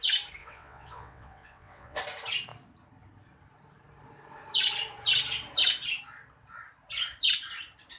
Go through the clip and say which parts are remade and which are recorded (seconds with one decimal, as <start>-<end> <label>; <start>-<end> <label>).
0.0-0.4 recorded; 0.4-2.0 remade; 2.0-8.0 recorded